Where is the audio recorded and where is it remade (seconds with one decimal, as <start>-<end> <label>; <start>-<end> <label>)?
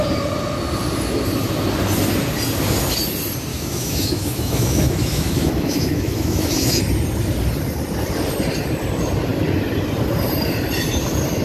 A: 0.0-3.5 recorded; 3.5-6.8 remade; 6.8-11.4 recorded